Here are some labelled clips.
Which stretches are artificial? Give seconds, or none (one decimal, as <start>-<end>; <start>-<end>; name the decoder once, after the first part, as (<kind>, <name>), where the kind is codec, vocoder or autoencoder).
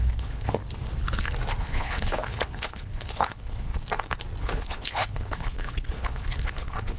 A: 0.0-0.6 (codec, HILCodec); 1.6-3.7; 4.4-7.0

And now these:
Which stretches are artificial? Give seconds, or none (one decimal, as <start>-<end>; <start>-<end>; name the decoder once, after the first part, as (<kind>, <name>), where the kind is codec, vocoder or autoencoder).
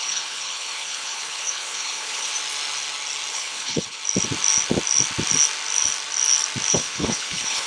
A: 0.0-2.3 (codec, HILCodec); 3.3-4.0; 6.7-7.7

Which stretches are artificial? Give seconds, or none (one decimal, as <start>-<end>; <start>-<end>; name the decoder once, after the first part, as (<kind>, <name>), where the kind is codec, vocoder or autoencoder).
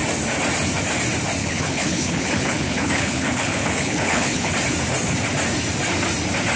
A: 1.4-4.5 (codec, HILCodec)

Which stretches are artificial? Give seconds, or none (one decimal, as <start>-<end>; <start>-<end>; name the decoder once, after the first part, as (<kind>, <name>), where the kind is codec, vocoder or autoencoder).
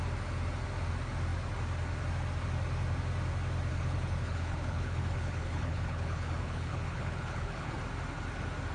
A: 3.7-7.8 (codec, HILCodec)